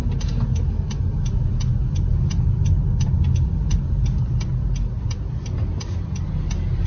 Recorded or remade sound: recorded